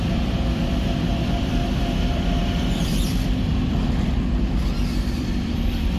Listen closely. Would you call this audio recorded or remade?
remade